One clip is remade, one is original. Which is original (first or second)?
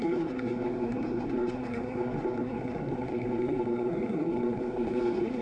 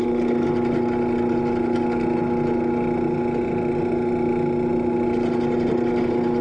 second